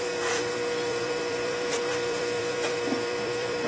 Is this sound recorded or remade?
remade